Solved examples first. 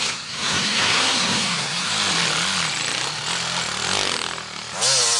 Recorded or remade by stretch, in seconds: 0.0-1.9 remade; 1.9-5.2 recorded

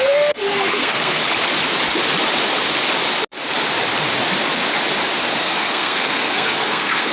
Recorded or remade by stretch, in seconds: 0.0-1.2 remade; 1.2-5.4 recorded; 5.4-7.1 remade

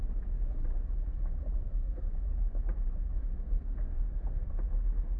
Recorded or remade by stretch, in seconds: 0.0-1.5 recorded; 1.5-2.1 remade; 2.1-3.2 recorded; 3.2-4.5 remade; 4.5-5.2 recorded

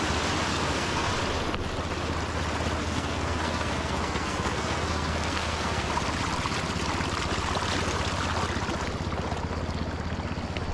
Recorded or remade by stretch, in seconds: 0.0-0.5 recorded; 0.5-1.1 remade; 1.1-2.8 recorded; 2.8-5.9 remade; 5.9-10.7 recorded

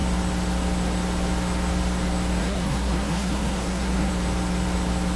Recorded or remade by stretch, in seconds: 0.0-2.4 recorded; 2.4-4.1 remade; 4.1-5.2 recorded

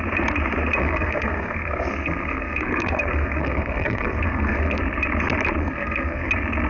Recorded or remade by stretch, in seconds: 0.0-0.8 recorded; 0.8-4.8 remade; 4.8-5.6 recorded; 5.6-6.3 remade; 6.3-6.7 recorded